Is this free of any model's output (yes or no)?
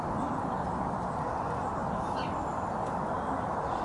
yes